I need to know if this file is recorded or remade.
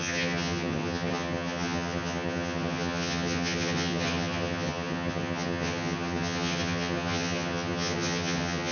remade